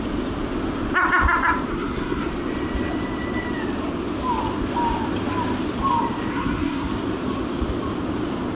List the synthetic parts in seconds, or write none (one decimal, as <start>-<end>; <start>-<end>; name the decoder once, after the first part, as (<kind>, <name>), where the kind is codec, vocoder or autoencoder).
1.7-2.3 (codec, SNAC); 6.3-6.9